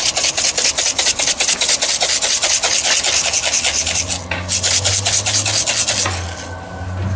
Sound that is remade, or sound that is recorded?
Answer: recorded